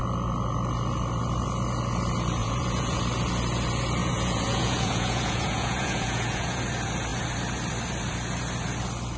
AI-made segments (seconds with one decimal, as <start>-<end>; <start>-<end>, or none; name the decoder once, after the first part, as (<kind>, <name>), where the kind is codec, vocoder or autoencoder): 2.4-3.0 (vocoder, Vocos); 4.0-6.6